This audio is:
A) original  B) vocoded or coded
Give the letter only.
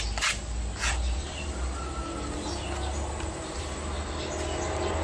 A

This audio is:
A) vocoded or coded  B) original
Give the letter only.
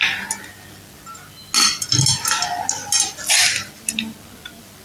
B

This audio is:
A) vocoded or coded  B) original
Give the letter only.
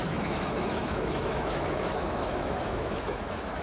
A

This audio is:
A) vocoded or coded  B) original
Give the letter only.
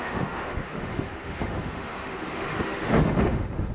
A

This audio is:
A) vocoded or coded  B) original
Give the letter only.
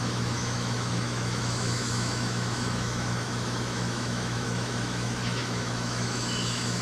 A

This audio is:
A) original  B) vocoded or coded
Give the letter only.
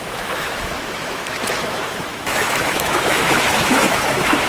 B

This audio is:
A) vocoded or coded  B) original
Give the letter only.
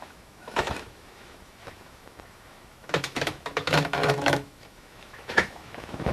A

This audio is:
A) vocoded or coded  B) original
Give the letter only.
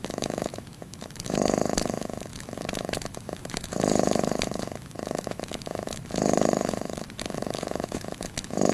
A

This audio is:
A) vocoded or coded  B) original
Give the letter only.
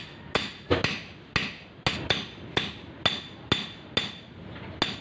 B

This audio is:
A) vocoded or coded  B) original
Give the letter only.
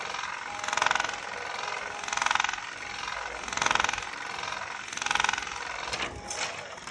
B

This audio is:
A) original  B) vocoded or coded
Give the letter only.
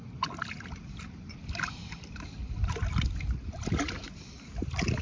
A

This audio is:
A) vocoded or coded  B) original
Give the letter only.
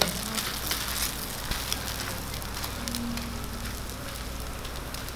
B